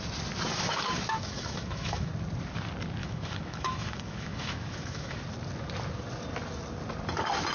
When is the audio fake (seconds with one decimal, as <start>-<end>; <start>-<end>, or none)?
0.5-2.1; 3.0-5.2